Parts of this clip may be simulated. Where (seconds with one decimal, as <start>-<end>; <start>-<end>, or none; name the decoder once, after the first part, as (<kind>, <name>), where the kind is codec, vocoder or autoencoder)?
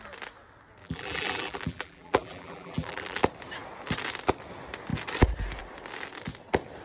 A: 0.8-3.2 (vocoder, BigVGAN v2)